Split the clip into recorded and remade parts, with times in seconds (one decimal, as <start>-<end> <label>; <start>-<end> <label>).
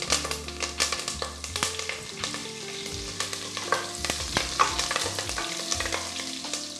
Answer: 0.0-6.8 recorded